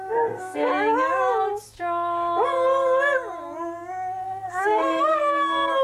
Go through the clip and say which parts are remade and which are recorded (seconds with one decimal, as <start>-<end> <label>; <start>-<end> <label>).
0.0-0.7 remade; 0.7-4.2 recorded; 4.2-5.8 remade